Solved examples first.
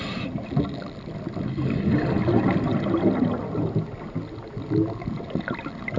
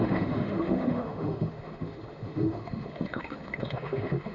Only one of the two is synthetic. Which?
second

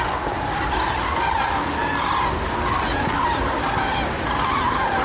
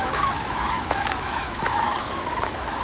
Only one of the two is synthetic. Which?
second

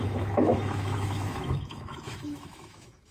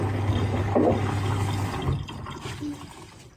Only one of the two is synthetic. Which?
first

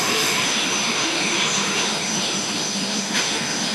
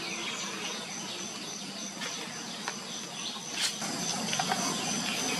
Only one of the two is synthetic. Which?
first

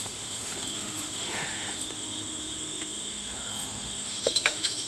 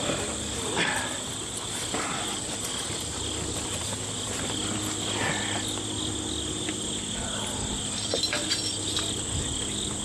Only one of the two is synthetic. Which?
first